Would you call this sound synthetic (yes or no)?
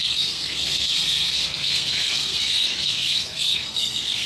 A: yes